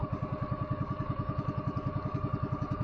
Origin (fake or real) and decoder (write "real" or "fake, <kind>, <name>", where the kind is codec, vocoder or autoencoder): fake, codec, DAC